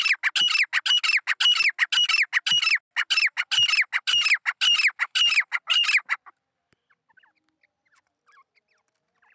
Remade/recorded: recorded